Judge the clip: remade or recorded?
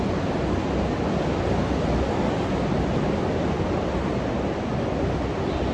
recorded